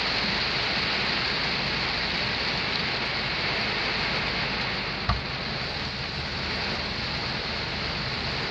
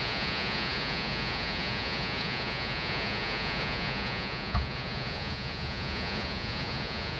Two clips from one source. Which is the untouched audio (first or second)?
first